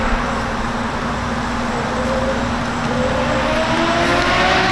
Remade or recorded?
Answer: recorded